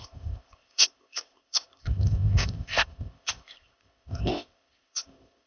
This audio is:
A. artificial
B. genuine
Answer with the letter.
A